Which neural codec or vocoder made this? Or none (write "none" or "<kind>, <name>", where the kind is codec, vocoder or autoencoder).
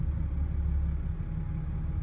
none